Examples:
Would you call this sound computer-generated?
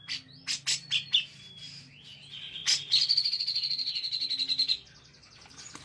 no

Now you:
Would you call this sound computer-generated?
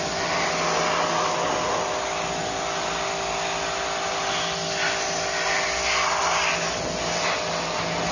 no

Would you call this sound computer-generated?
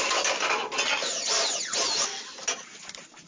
no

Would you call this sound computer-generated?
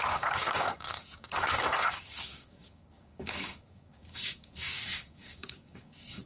yes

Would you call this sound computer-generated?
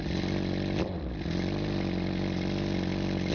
no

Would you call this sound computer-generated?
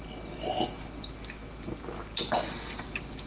no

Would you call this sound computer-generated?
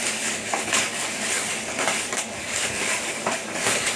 yes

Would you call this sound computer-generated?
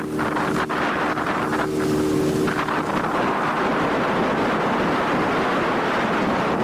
no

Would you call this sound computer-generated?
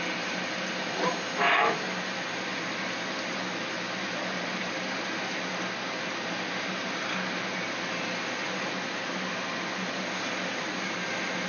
no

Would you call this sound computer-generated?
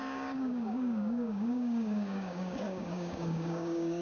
yes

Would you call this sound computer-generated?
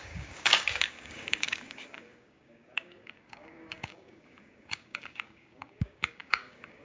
yes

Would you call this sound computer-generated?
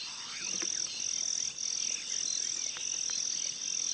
no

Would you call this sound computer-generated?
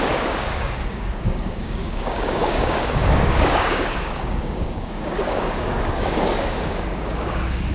yes